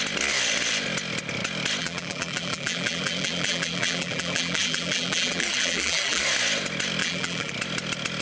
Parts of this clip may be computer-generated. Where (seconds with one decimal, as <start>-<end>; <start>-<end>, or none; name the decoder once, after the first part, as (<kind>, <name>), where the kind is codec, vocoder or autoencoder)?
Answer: 1.8-6.2 (vocoder, BigVGAN v2); 7.0-7.5